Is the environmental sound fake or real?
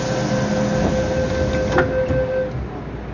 real